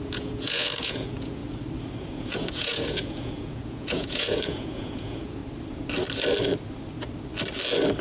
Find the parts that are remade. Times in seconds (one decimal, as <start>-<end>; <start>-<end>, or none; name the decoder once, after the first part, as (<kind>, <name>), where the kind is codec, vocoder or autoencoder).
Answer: 0.0-1.4 (vocoder, Vocos); 2.0-5.4